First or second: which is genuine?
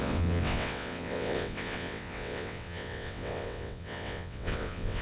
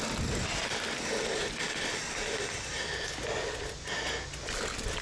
second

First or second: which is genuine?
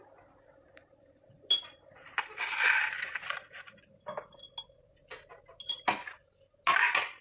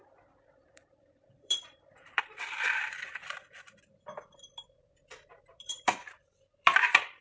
first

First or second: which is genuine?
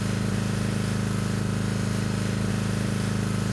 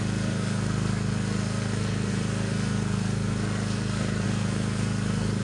first